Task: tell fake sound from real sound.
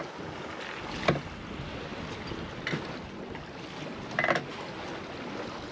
real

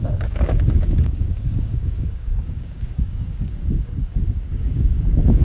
fake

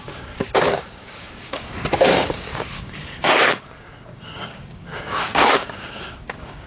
fake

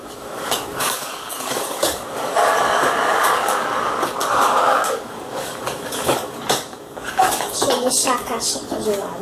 fake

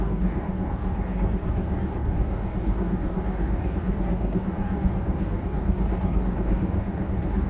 fake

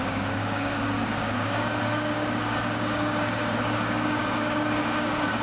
fake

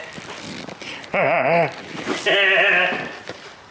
real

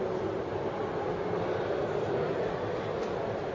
real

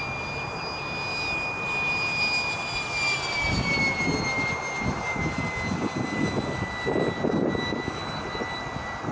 real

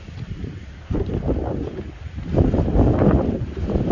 real